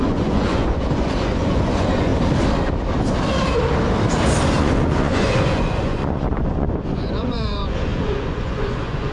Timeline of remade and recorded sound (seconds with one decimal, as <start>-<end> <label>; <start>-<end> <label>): 0.0-2.1 remade; 2.1-4.6 recorded; 4.6-9.1 remade